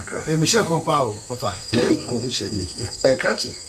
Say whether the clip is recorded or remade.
remade